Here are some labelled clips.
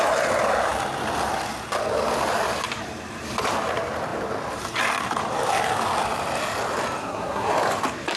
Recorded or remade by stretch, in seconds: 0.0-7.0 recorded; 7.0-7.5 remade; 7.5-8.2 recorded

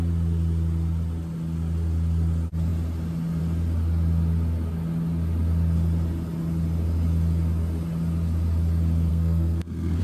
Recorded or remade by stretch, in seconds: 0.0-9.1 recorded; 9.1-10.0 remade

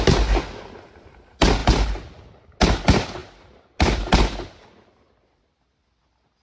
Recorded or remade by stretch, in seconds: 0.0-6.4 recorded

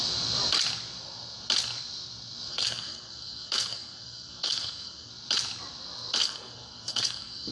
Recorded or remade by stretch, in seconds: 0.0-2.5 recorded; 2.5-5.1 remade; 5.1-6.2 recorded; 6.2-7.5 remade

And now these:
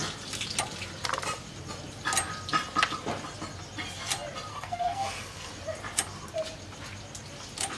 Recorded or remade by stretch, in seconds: 0.0-4.5 recorded; 4.5-5.5 remade; 5.5-7.8 recorded

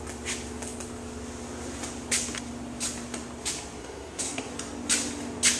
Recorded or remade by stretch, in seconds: 0.0-3.8 recorded; 3.8-4.5 remade; 4.5-5.6 recorded

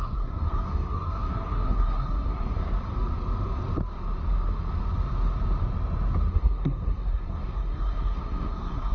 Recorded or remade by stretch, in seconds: 0.0-2.6 remade; 2.6-6.3 recorded; 6.3-8.9 remade

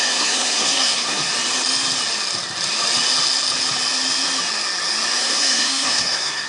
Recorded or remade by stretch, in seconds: 0.0-1.3 remade; 1.3-5.2 recorded; 5.2-6.5 remade